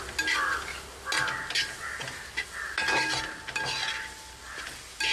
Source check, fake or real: real